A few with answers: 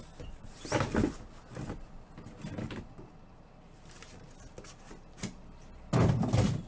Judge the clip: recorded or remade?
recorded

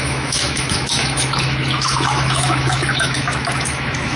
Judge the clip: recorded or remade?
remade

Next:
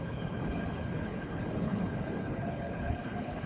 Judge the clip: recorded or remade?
remade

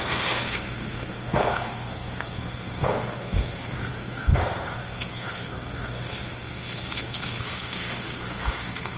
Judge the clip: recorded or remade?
remade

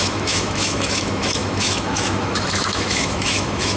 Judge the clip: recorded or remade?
remade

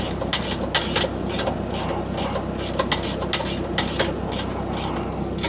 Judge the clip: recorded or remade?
recorded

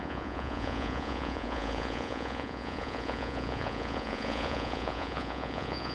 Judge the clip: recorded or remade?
remade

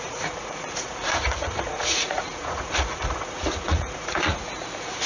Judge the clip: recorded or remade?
remade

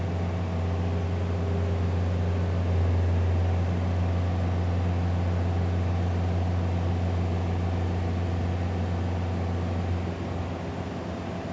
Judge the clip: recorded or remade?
recorded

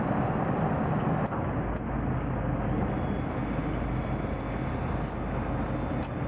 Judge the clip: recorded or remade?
recorded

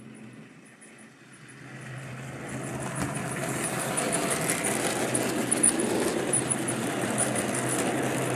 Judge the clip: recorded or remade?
recorded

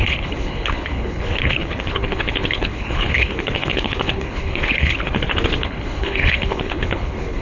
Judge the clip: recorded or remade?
remade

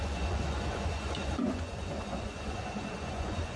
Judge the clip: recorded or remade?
remade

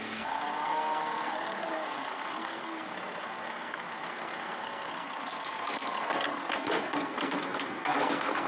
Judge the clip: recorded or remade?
remade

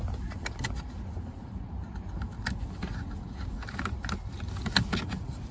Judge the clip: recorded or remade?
recorded